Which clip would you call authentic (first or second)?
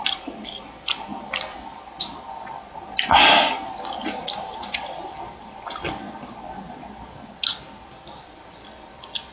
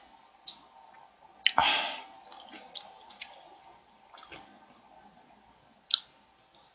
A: second